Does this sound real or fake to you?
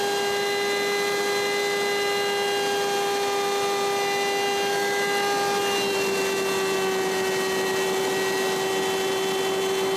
real